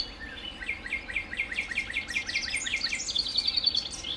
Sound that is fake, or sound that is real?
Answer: real